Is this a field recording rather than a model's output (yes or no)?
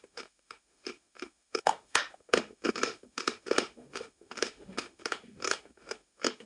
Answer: no